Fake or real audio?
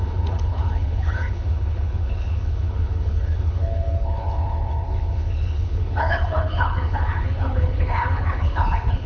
fake